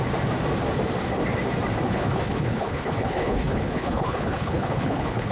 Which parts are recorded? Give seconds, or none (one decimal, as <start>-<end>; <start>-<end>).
0.0-1.9

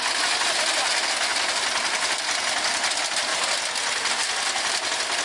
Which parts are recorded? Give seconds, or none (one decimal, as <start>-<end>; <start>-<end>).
0.0-5.2

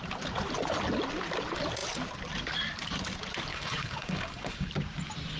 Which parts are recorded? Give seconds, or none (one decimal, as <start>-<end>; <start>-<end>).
0.0-3.5; 4.7-5.4

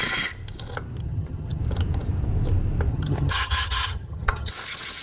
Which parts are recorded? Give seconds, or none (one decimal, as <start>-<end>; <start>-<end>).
0.0-1.0; 1.6-2.9; 4.5-5.0

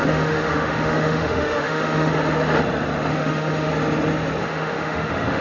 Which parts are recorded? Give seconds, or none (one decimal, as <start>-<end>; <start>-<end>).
2.1-3.1; 3.7-4.4